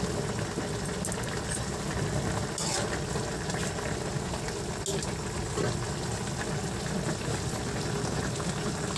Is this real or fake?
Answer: real